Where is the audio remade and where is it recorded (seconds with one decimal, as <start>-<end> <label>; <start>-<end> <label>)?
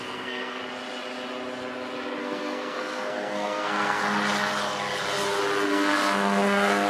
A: 0.0-0.6 remade; 0.6-2.2 recorded; 2.2-4.0 remade; 4.0-5.7 recorded; 5.7-6.9 remade